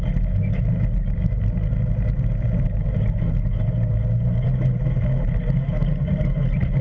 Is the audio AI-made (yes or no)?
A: no